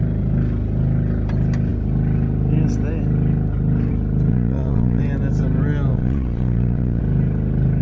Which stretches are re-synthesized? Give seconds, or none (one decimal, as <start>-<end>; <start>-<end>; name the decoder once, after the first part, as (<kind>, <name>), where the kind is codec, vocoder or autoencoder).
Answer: 4.3-5.0 (vocoder, Vocos); 5.9-7.0